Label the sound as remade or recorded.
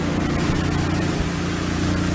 recorded